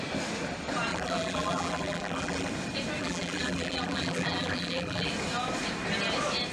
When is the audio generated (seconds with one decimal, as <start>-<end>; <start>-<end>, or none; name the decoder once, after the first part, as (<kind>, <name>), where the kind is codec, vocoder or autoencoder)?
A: 0.9-2.5 (vocoder, BigVGAN v2); 3.0-5.1